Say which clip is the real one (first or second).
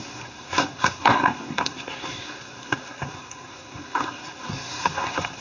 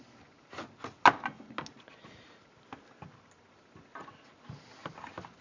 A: second